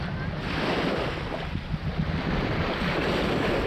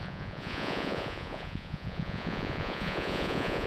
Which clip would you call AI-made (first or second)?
second